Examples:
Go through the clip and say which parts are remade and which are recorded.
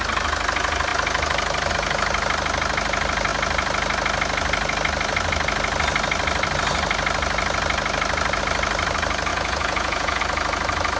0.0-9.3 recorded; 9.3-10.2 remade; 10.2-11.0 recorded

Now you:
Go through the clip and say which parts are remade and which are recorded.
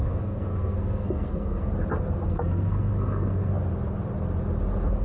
0.0-1.7 remade; 1.7-2.3 recorded; 2.3-3.5 remade; 3.5-5.0 recorded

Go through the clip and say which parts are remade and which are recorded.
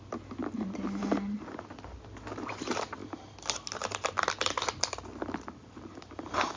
0.0-6.6 recorded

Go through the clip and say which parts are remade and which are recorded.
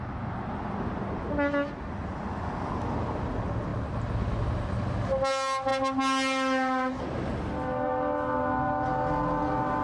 0.0-9.8 recorded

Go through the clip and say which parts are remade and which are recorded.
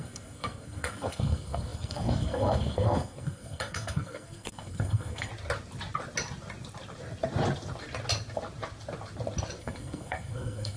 0.0-5.3 remade; 5.3-9.6 recorded; 9.6-10.8 remade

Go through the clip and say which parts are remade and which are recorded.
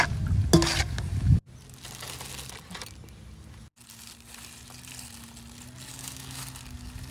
0.0-5.9 recorded; 5.9-6.4 remade; 6.4-7.1 recorded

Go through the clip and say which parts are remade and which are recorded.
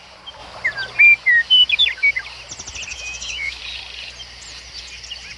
0.0-2.9 recorded; 2.9-3.6 remade; 3.6-5.4 recorded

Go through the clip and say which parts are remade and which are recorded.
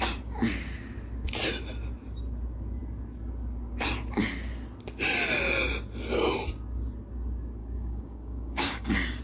0.0-7.6 recorded; 7.6-9.2 remade